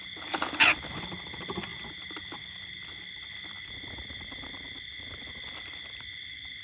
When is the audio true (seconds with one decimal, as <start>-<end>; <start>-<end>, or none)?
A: 0.0-6.6